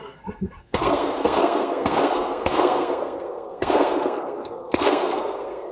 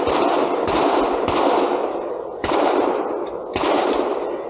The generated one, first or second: first